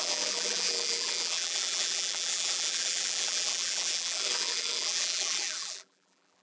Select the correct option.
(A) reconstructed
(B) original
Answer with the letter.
A